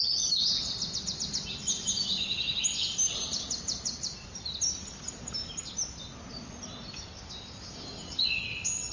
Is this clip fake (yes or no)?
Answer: no